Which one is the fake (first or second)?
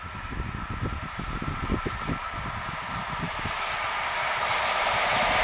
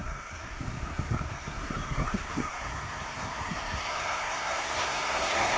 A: second